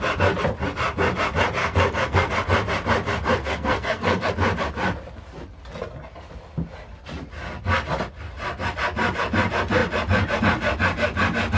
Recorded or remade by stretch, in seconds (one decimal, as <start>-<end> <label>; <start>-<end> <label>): 0.0-1.6 recorded; 1.6-2.3 remade; 2.3-3.4 recorded; 3.4-4.3 remade; 4.3-11.6 recorded